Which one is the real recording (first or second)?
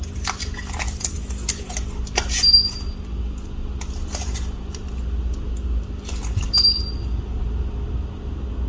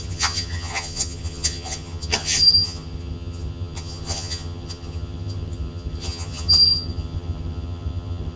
first